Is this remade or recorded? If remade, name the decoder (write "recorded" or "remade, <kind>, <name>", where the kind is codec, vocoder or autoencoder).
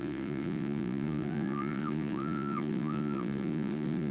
remade, vocoder, Vocos